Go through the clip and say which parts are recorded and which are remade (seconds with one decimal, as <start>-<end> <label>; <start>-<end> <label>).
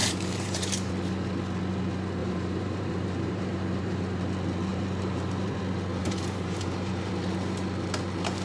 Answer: 0.0-0.9 remade; 0.9-2.2 recorded; 2.2-4.0 remade; 4.0-4.7 recorded; 4.7-5.6 remade; 5.6-6.0 recorded; 6.0-7.1 remade; 7.1-8.4 recorded